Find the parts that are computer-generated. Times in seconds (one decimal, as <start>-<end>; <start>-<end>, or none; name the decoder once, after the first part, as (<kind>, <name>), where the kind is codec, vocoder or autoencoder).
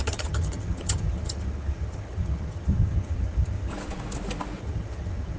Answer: 0.0-3.7 (vocoder, HiFi-GAN); 4.6-5.4